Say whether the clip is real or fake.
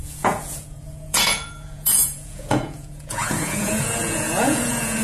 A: fake